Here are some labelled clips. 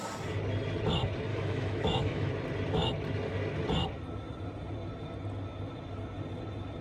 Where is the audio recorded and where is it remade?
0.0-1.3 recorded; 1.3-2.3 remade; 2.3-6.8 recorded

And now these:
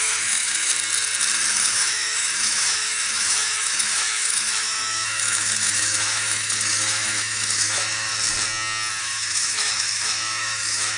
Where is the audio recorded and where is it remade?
0.0-0.7 remade; 0.7-1.5 recorded; 1.5-8.1 remade; 8.1-9.0 recorded; 9.0-11.0 remade

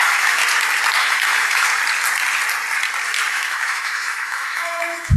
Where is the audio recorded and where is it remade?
0.0-0.4 remade; 0.4-1.0 recorded; 1.0-1.7 remade; 1.7-3.3 recorded; 3.3-5.2 remade

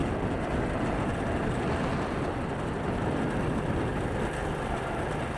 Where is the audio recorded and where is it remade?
0.0-5.4 recorded

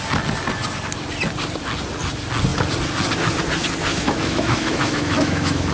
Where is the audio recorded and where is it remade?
0.0-3.9 recorded; 3.9-5.7 remade

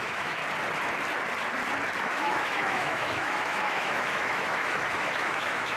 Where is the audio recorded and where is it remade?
0.0-0.4 remade; 0.4-2.0 recorded; 2.0-5.8 remade

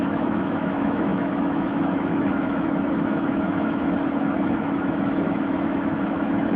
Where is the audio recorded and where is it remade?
0.0-6.6 remade